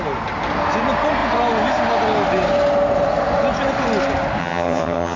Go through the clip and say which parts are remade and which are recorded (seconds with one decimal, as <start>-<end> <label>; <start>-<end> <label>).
0.0-4.4 recorded; 4.4-5.2 remade